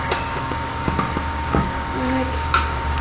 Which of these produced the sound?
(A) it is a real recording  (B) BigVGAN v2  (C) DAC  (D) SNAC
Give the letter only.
C